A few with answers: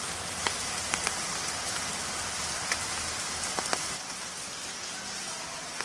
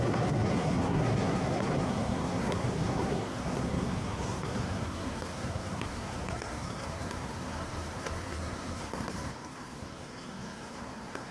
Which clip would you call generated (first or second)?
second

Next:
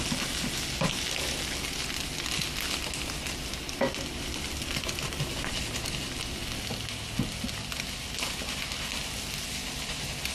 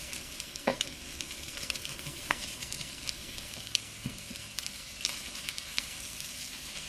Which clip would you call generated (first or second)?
second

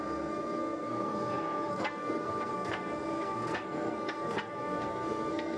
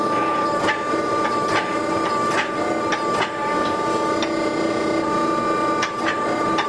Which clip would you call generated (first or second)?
first